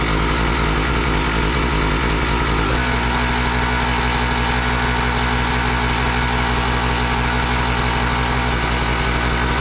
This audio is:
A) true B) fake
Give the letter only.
A